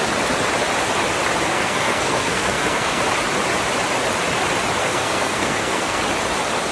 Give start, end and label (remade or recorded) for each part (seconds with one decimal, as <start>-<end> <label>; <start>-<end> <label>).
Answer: 0.0-1.5 recorded; 1.5-3.0 remade; 3.0-4.8 recorded; 4.8-6.0 remade; 6.0-6.7 recorded